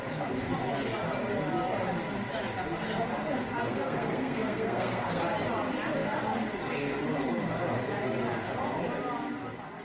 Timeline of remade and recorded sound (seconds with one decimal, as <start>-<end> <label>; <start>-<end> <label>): 0.0-3.6 recorded; 3.6-5.2 remade; 5.2-9.8 recorded